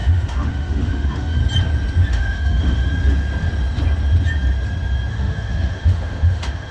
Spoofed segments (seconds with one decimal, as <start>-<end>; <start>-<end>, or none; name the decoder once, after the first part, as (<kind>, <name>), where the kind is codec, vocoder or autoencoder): 0.0-1.4 (autoencoder, DAC-VAE); 2.1-2.9; 5.1-6.7